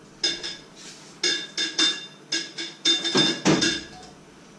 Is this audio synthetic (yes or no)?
no